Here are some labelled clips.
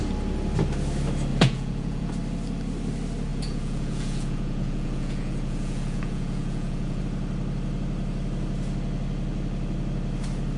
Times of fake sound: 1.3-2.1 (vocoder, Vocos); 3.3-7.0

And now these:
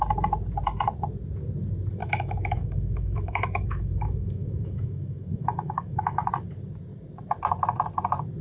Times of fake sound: 2.0-6.3 (autoencoder, DAC-VAE)